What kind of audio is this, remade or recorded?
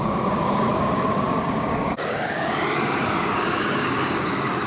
remade